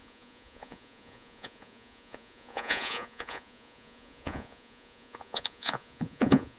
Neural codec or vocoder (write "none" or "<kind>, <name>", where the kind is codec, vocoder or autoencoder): vocoder, Vocos